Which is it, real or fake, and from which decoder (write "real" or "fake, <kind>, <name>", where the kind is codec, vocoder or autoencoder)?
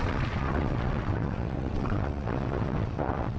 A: fake, vocoder, WaveNeXt